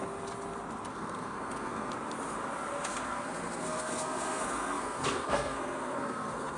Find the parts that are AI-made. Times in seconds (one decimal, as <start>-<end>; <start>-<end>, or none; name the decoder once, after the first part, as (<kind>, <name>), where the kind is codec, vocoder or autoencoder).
0.9-1.9 (codec, SNAC); 2.9-6.6